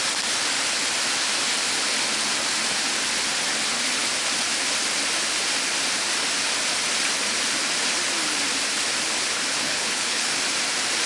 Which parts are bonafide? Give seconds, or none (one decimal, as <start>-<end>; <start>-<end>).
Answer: 0.0-9.5; 10.3-11.1